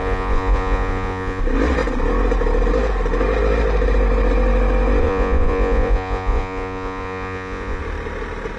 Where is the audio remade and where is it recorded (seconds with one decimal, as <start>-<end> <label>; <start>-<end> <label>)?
0.0-1.4 remade; 1.4-5.0 recorded; 5.0-7.8 remade; 7.8-8.6 recorded